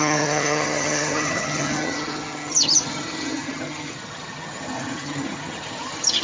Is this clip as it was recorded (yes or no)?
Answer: no